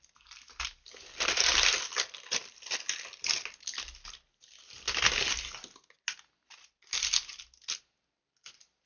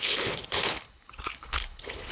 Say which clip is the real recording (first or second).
first